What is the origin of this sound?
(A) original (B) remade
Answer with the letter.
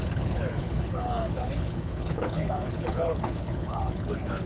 B